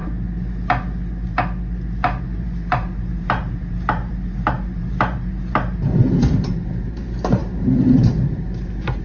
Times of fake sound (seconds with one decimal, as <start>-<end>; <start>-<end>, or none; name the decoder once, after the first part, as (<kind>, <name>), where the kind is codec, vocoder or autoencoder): 2.2-9.0 (vocoder, BigVGAN v2)